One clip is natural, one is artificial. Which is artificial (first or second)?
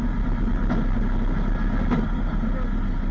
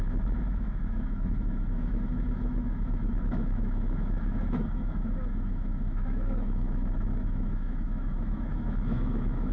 second